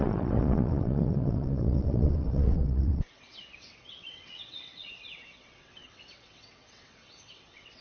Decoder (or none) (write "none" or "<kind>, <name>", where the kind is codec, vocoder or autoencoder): vocoder, WaveNeXt